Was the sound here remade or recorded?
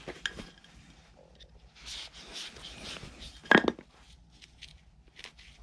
recorded